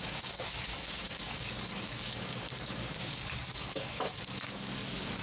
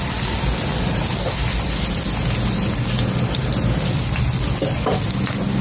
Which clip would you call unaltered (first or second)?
second